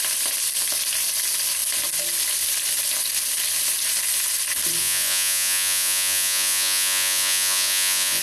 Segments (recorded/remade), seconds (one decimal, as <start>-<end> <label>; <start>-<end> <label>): 0.0-4.8 recorded; 4.8-8.2 remade